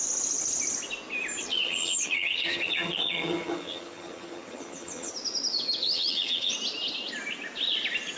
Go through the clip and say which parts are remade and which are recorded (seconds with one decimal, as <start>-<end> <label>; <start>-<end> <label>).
0.0-1.5 recorded; 1.5-5.1 remade; 5.1-5.8 recorded; 5.8-6.5 remade; 6.5-8.2 recorded